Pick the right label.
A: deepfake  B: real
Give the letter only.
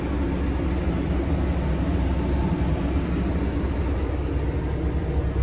B